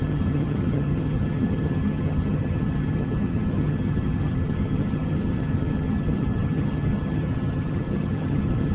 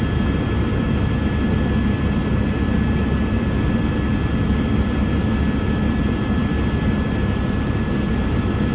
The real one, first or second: second